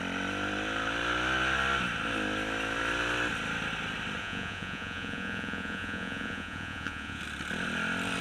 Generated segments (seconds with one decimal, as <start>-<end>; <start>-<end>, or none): 4.2-7.2

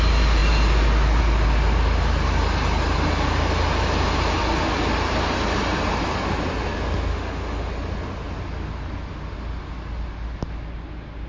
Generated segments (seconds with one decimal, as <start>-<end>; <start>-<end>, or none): 7.1-7.7

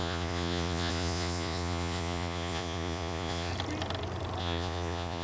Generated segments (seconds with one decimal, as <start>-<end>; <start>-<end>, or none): 0.0-3.5; 4.4-5.2

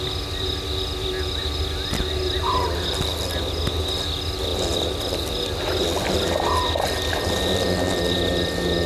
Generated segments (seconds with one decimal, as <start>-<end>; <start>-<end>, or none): none

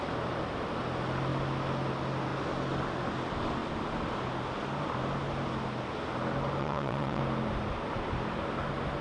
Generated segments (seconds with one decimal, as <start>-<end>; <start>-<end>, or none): 6.6-7.2

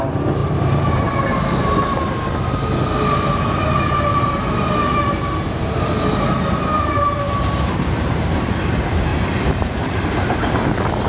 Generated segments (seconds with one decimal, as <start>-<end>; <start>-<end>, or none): 0.4-1.8; 4.1-8.5; 9.1-10.0

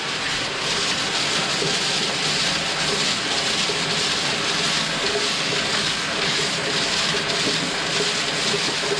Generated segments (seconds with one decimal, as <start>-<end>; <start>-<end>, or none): 5.0-6.5

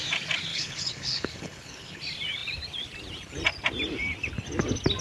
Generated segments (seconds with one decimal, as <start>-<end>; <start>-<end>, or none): 0.5-2.0